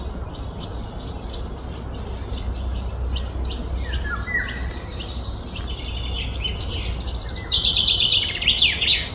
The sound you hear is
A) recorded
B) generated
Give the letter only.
A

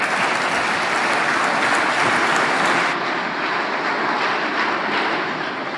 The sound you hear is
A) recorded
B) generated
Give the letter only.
A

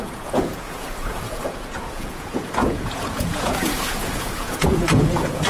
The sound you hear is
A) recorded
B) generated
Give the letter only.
B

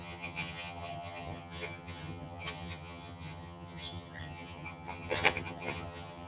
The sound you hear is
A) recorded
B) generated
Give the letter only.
B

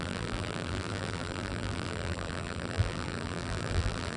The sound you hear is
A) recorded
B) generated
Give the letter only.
B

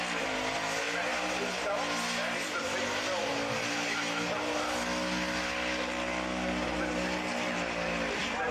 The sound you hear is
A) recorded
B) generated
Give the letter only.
A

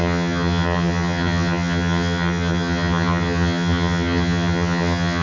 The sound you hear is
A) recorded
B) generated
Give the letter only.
B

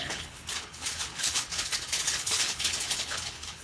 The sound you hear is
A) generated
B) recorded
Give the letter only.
A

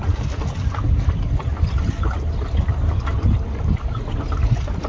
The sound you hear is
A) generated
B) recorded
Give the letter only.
B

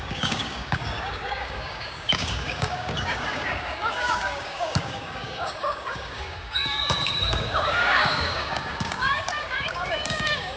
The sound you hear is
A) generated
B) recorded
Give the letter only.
A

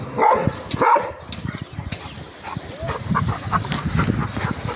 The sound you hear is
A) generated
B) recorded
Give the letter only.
B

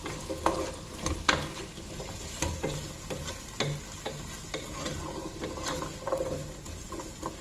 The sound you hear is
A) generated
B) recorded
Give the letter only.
B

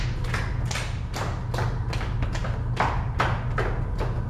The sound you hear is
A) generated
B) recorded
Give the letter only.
B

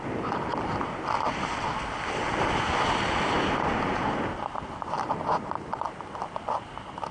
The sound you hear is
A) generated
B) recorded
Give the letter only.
B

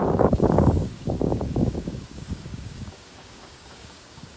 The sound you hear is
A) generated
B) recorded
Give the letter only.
A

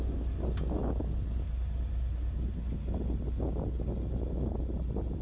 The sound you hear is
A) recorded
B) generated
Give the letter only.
A